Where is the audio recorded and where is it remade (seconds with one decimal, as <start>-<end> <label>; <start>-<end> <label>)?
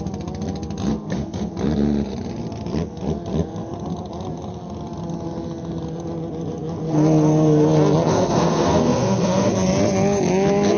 0.0-0.9 recorded; 0.9-1.5 remade; 1.5-8.1 recorded; 8.1-9.5 remade; 9.5-10.8 recorded